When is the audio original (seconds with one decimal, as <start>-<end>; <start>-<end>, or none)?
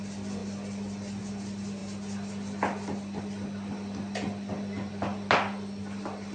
0.0-6.3